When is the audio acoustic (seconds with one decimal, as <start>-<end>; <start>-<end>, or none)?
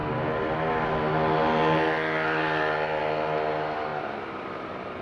0.0-5.0